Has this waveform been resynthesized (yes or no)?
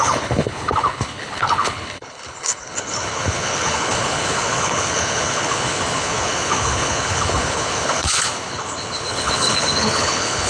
yes